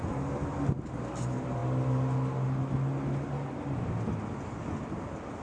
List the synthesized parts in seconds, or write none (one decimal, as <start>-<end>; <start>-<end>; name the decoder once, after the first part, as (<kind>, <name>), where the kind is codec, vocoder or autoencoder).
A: none